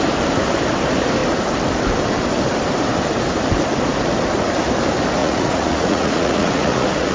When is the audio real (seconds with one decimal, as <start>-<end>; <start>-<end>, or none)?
0.0-5.2